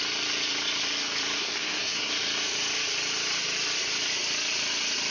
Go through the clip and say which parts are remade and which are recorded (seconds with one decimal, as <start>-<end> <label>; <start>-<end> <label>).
0.0-1.4 recorded; 1.4-2.1 remade; 2.1-5.1 recorded